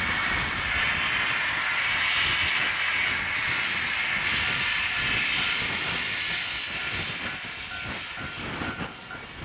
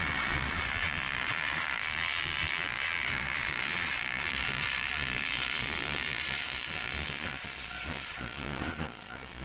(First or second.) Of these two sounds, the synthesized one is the second